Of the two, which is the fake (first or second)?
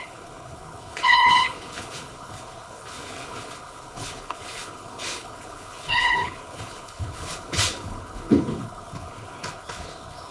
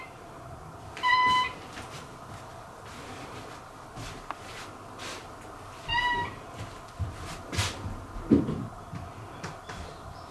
first